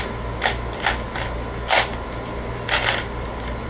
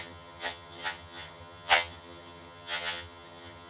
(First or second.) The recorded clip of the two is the first